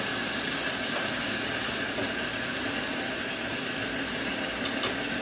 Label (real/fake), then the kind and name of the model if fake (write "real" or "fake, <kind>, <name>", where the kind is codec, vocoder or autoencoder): real